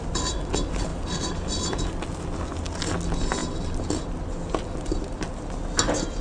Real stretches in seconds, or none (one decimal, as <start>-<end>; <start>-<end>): 0.0-6.2